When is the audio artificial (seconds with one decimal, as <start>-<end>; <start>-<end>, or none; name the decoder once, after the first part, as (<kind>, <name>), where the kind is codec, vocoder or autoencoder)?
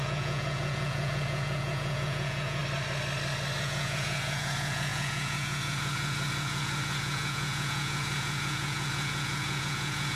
0.0-2.6 (vocoder, Vocos); 3.6-10.2